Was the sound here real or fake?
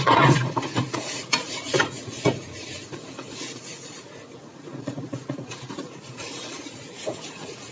fake